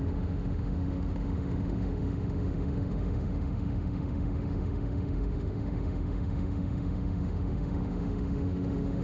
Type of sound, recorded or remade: remade